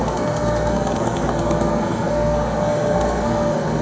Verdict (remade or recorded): remade